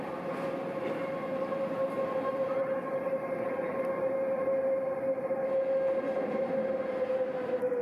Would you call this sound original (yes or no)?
yes